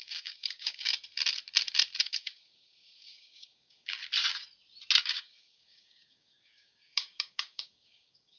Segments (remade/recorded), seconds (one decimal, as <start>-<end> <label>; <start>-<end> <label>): 0.0-0.9 remade; 0.9-2.0 recorded; 2.0-4.0 remade; 4.0-5.0 recorded; 5.0-8.4 remade